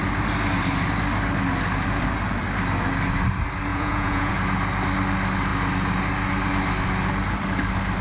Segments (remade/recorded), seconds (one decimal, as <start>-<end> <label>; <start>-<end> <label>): 0.0-3.7 recorded; 3.7-4.3 remade; 4.3-8.0 recorded